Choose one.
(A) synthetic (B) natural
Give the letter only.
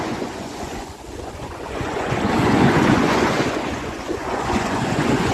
A